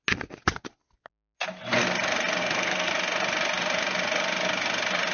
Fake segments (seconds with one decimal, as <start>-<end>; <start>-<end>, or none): 2.4-2.9